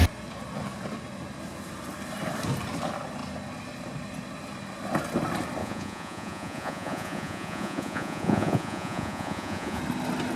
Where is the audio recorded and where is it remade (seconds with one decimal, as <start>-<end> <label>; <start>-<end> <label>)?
0.0-5.6 recorded; 5.6-9.8 remade; 9.8-10.4 recorded